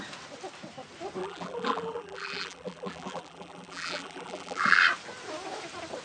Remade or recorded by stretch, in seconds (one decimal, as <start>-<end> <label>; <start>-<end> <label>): 0.0-1.2 recorded; 1.2-4.8 remade; 4.8-6.0 recorded